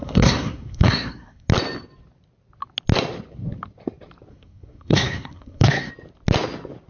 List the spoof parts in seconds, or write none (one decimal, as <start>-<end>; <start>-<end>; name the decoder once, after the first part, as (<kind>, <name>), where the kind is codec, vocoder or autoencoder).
0.0-1.5 (codec, SNAC); 4.3-5.9